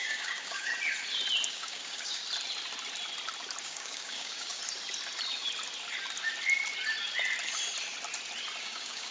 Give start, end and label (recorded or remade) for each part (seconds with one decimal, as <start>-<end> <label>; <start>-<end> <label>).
0.0-0.7 remade; 0.7-1.5 recorded; 1.5-2.2 remade; 2.2-3.6 recorded; 3.6-4.6 remade; 4.6-8.6 recorded; 8.6-9.1 remade